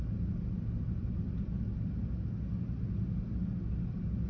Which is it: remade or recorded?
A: recorded